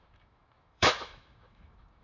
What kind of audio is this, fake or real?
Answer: fake